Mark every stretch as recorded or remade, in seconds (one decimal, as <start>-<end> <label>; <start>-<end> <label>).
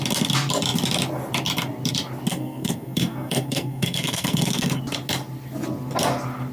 0.0-2.3 recorded; 2.3-4.8 remade; 4.8-6.5 recorded